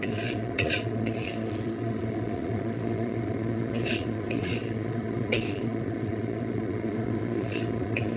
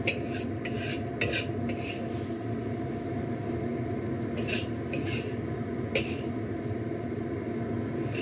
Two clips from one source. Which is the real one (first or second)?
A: second